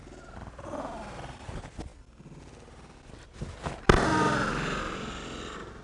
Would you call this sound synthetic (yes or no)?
no